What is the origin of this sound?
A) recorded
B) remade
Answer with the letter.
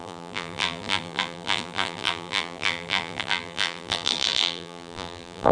B